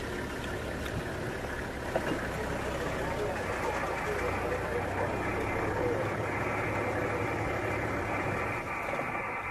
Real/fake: real